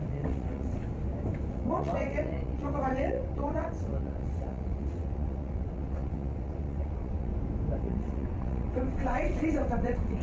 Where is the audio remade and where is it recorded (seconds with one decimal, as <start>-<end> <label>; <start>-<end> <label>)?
0.0-0.8 remade; 0.8-1.5 recorded; 1.5-7.3 remade; 7.3-7.8 recorded; 7.8-10.2 remade